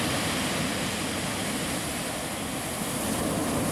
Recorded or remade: recorded